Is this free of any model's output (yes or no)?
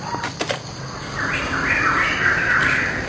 yes